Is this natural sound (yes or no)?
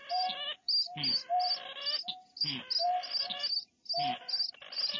yes